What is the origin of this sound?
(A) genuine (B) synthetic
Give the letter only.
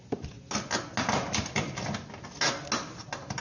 A